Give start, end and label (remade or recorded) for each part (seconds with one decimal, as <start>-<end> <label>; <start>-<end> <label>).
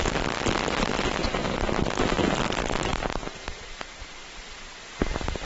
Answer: 0.0-5.4 recorded